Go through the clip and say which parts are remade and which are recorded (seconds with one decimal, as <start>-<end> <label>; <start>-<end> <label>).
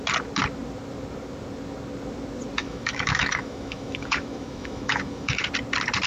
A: 0.0-2.6 recorded; 2.6-5.5 remade; 5.5-6.1 recorded